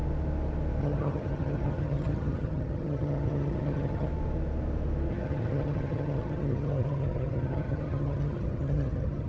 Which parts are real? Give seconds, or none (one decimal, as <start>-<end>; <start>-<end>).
0.0-0.8; 4.1-5.1